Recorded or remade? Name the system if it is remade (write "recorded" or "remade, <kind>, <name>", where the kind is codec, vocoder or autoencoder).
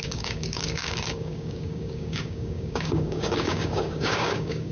remade, codec, DAC